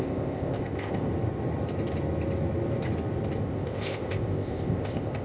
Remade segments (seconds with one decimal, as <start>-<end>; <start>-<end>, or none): 0.0-1.1; 3.4-5.2